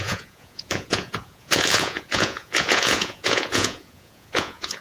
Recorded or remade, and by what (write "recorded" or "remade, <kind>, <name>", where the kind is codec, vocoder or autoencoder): remade, vocoder, Vocos